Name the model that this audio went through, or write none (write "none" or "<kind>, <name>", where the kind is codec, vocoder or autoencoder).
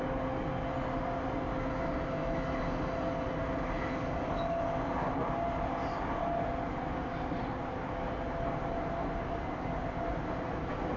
none